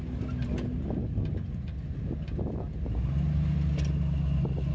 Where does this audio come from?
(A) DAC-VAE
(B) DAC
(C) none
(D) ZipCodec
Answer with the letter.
C